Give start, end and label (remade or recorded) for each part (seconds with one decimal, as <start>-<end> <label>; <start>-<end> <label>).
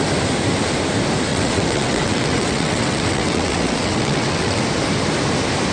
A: 0.0-1.3 recorded; 1.3-4.6 remade; 4.6-5.7 recorded